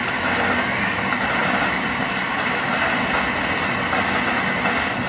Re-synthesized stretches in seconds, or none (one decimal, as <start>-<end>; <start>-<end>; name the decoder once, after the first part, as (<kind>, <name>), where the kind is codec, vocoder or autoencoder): none